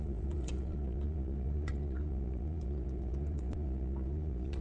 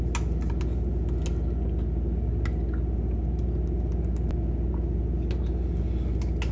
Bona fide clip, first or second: second